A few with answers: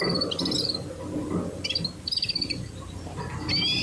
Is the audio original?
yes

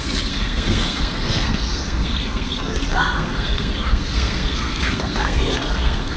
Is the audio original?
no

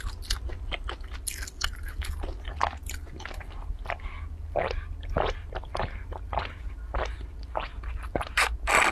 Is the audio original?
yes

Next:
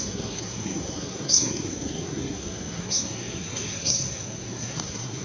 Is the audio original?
no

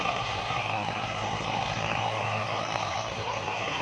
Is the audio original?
no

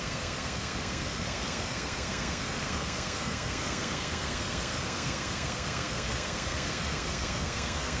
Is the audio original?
no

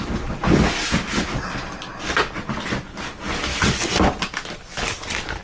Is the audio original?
yes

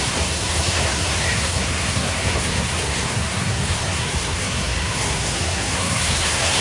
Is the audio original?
no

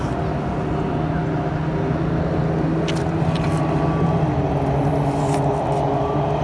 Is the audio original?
yes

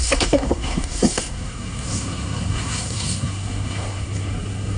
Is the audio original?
no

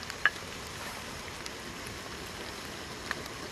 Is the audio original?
yes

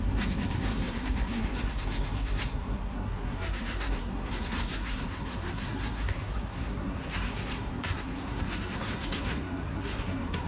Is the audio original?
no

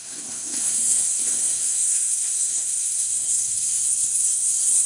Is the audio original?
no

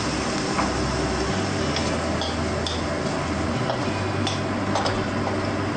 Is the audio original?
yes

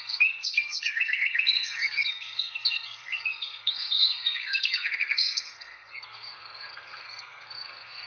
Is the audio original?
no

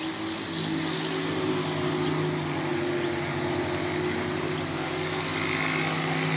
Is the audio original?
yes